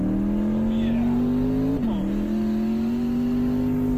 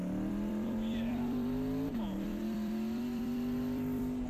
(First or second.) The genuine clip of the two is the first